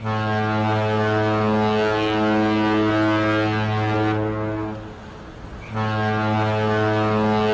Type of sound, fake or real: real